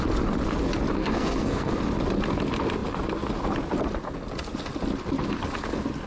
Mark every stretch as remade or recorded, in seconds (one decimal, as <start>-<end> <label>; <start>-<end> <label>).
0.0-1.0 recorded; 1.0-1.7 remade; 1.7-6.1 recorded